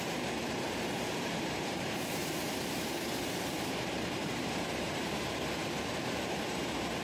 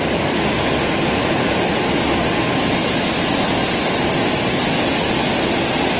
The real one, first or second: second